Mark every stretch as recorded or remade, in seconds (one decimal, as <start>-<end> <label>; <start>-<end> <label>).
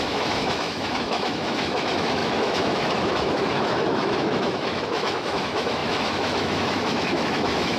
0.0-7.8 remade